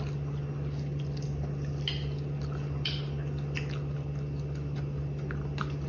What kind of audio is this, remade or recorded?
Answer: recorded